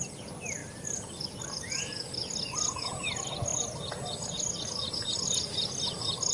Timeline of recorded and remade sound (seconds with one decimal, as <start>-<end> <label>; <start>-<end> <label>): 0.0-6.3 recorded